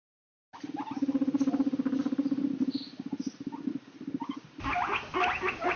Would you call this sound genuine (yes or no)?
yes